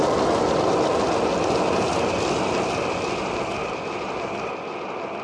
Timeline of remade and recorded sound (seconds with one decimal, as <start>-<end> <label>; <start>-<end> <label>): 0.0-3.6 recorded; 3.6-4.5 remade; 4.5-5.2 recorded